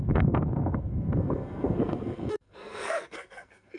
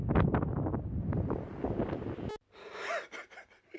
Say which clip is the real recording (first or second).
second